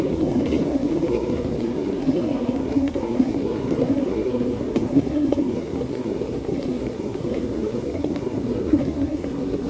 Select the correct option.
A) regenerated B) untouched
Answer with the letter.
A